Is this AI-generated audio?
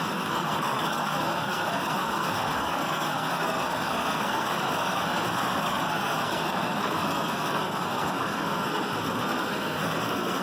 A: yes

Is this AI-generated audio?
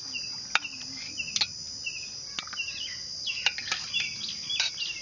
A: no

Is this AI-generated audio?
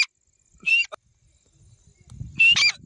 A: no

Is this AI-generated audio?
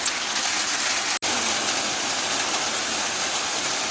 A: no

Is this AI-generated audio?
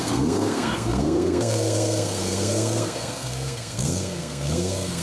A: yes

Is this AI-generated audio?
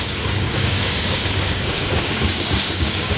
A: yes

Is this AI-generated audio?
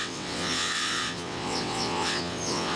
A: yes